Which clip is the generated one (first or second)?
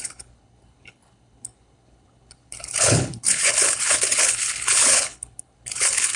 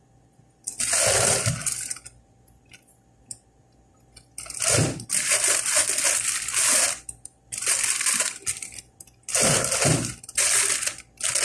first